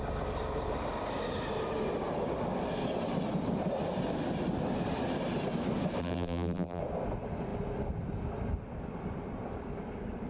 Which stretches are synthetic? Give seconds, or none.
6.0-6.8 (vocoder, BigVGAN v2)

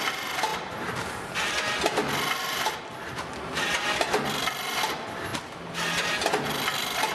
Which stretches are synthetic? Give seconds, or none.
none

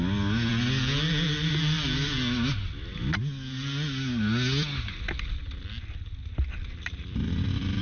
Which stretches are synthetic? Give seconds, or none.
6.2-7.8 (vocoder, BigVGAN v2)